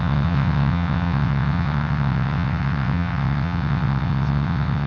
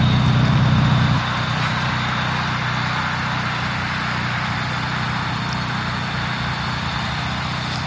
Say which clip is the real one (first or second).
second